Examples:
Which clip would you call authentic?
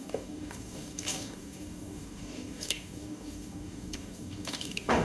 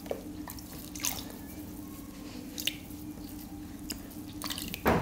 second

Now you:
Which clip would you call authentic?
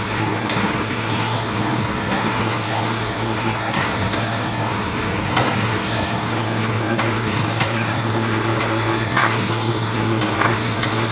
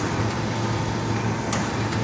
second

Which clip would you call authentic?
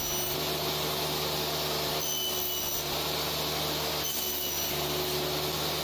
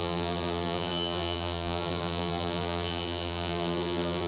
first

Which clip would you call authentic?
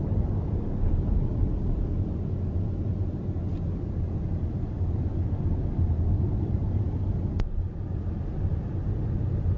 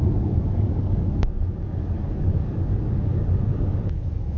first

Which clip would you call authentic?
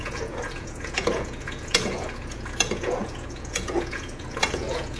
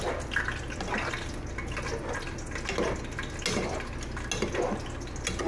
second